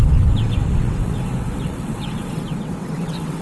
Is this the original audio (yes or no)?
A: no